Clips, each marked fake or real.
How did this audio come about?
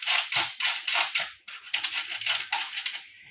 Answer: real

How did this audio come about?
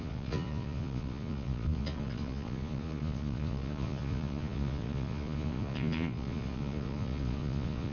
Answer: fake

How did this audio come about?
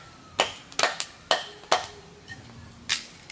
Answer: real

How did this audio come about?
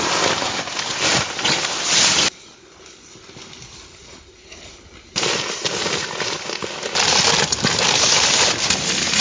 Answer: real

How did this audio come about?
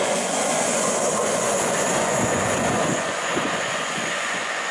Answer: fake